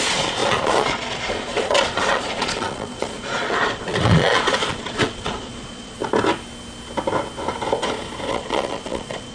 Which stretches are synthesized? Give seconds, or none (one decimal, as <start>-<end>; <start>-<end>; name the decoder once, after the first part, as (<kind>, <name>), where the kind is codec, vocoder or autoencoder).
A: 0.0-6.0 (vocoder, Vocos); 8.3-9.3